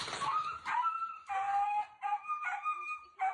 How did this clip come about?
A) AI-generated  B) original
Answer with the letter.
B